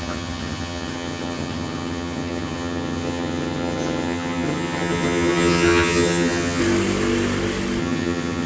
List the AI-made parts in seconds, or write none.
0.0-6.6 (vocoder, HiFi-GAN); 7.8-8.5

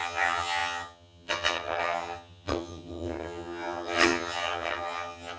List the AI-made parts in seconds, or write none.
0.0-5.4 (vocoder, HiFi-GAN)

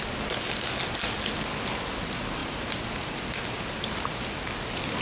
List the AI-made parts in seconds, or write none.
none

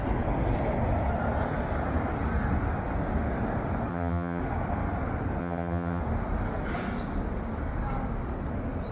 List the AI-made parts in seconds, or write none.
3.9-4.4 (vocoder, HiFi-GAN); 5.4-6.0

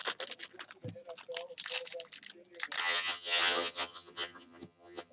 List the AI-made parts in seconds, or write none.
2.8-5.1 (vocoder, HiFi-GAN)